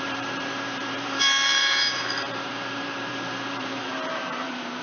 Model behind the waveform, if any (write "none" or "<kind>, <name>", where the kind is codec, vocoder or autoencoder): vocoder, BigVGAN v2